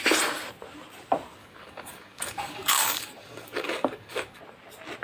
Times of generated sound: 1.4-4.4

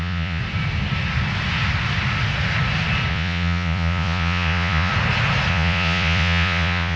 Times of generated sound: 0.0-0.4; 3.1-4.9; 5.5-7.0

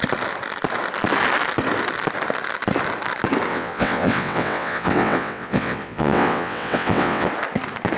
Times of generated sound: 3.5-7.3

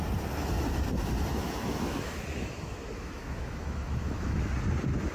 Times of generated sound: 1.4-4.5

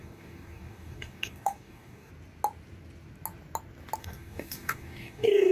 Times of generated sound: 0.0-2.1; 4.0-5.5

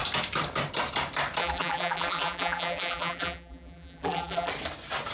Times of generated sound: 1.4-4.5

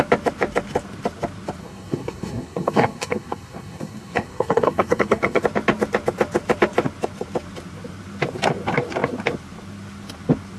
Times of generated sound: 1.6-5.4

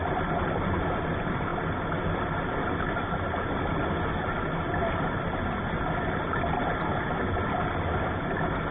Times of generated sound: none